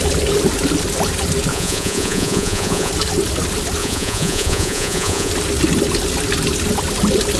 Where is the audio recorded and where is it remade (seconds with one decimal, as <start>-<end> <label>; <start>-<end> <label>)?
0.0-1.5 recorded; 1.5-2.9 remade; 2.9-3.8 recorded; 3.8-5.3 remade; 5.3-7.4 recorded

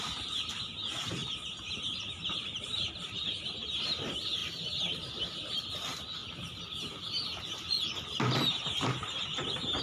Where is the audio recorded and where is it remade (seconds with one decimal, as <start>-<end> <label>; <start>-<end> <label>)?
0.0-1.2 recorded; 1.2-3.3 remade; 3.3-4.4 recorded; 4.4-5.7 remade; 5.7-9.8 recorded